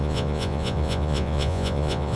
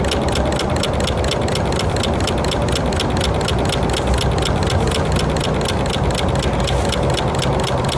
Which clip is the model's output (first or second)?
first